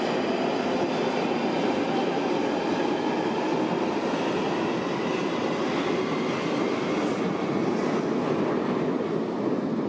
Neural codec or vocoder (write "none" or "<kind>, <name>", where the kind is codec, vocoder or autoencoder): none